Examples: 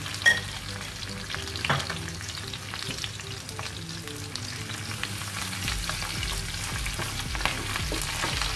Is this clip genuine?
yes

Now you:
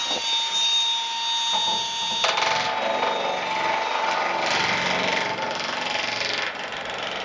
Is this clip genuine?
yes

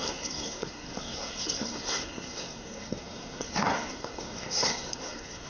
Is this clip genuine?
no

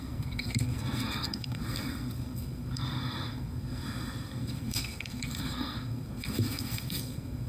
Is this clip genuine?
no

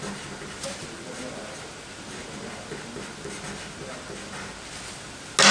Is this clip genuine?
yes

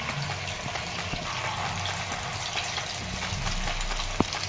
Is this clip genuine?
yes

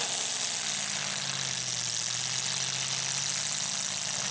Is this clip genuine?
yes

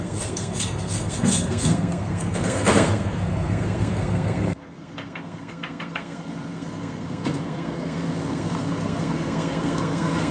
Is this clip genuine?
no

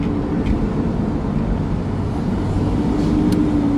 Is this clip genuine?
yes